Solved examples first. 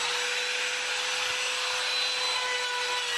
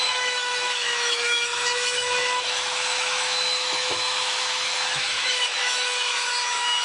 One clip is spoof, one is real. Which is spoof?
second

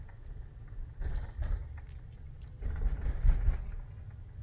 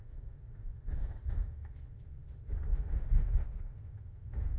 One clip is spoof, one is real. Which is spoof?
second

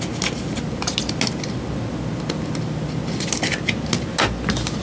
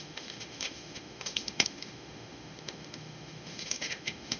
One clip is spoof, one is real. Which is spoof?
second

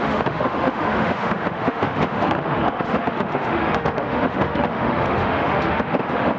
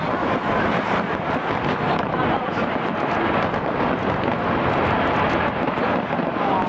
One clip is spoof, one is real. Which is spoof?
first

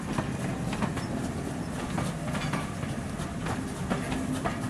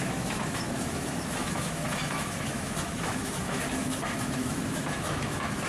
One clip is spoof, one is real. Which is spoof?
second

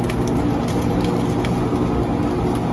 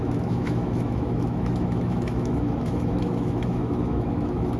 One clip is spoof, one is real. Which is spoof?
second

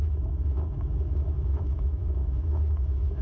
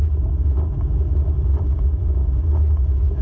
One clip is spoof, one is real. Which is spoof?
first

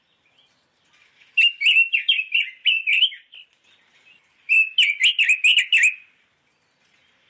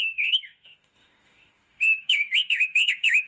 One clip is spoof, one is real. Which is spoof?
second